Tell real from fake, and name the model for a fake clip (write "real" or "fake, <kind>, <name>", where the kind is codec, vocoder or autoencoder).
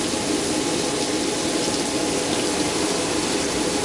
real